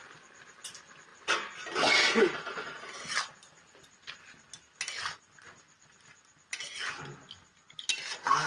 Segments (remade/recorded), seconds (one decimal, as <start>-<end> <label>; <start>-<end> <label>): 0.0-8.5 recorded